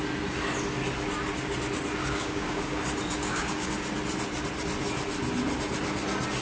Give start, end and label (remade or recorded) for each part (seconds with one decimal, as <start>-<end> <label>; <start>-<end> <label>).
0.0-2.0 recorded; 2.0-2.8 remade; 2.8-3.2 recorded; 3.2-3.7 remade; 3.7-6.4 recorded